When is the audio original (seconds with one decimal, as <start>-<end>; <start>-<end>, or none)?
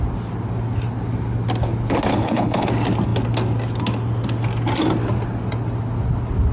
0.0-2.1; 2.7-6.5